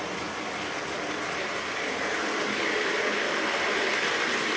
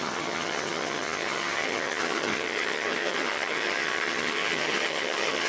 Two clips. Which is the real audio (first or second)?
first